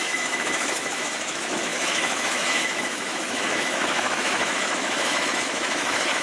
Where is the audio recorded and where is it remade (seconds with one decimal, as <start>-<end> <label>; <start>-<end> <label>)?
0.0-6.2 remade